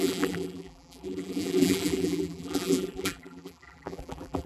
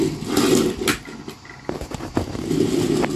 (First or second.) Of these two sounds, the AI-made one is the first